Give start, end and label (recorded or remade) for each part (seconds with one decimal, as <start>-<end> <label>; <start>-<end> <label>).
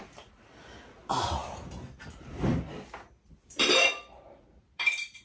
0.0-5.2 recorded